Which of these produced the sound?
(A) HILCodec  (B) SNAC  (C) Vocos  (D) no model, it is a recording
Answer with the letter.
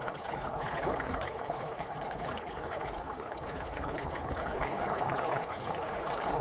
A